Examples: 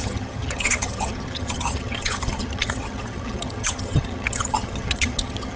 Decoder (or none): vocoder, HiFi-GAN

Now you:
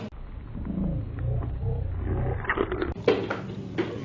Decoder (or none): none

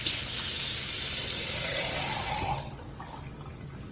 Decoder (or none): none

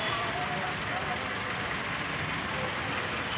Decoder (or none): none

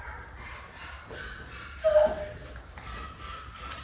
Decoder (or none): none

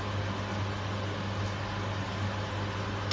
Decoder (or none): none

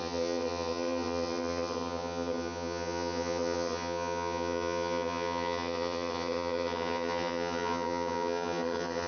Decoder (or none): vocoder, HiFi-GAN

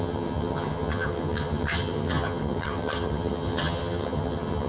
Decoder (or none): vocoder, HiFi-GAN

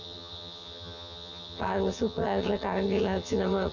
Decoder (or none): vocoder, HiFi-GAN